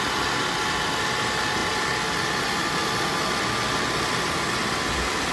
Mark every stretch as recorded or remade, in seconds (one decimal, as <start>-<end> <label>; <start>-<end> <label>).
0.0-5.3 recorded